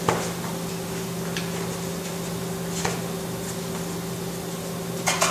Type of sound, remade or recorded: recorded